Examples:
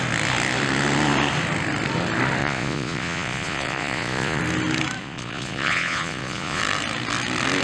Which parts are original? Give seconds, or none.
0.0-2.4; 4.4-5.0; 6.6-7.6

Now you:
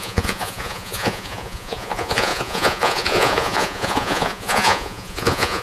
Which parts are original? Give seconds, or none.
none

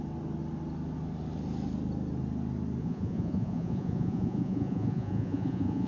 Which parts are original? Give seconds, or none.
0.0-2.8

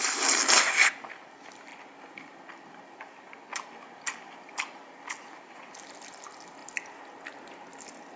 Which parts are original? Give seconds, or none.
0.0-8.2